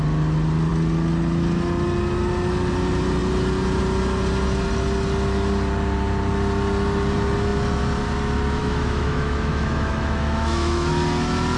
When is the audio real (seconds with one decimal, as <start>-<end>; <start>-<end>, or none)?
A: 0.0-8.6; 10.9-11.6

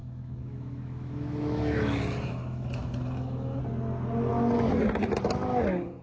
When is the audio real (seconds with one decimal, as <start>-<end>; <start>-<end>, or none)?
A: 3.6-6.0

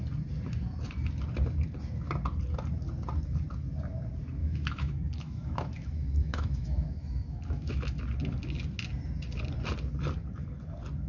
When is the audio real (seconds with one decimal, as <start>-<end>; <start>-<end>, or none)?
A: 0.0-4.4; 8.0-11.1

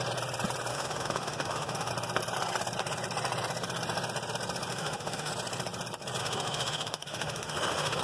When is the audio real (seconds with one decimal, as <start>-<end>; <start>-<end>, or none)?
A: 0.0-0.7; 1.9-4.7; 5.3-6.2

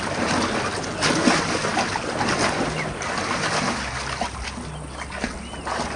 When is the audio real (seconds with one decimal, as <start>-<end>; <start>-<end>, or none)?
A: 0.0-6.0

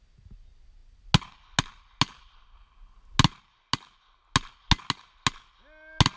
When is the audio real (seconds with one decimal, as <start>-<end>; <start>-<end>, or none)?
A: 0.0-6.2